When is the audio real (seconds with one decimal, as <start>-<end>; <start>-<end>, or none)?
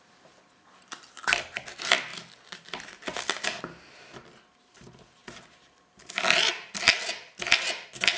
0.0-8.2